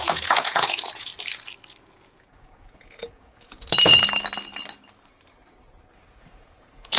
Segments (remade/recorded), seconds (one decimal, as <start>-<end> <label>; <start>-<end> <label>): 0.0-1.1 remade; 1.1-1.8 recorded; 1.8-3.9 remade; 3.9-6.2 recorded; 6.2-7.0 remade